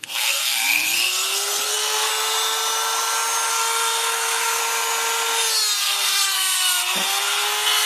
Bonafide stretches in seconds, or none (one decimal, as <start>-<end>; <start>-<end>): 2.1-3.5; 4.6-5.8